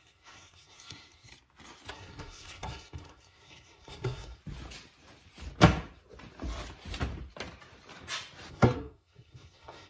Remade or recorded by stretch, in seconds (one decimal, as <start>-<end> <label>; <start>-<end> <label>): 0.0-1.3 remade; 1.3-1.9 recorded; 1.9-4.4 remade; 4.4-8.5 recorded; 8.5-9.9 remade